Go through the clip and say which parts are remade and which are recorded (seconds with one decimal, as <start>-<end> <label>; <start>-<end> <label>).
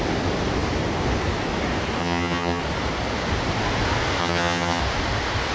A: 0.0-2.0 recorded; 2.0-2.6 remade; 2.6-4.2 recorded; 4.2-4.8 remade; 4.8-5.5 recorded